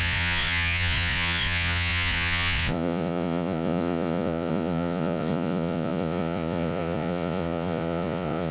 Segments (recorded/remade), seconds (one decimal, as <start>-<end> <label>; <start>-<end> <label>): 0.0-8.5 remade